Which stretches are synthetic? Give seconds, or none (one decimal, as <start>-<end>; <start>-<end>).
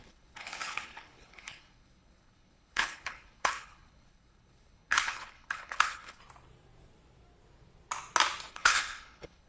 0.0-6.2; 8.5-9.5